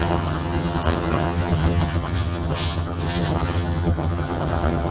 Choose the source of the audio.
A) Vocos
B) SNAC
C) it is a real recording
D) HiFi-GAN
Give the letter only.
D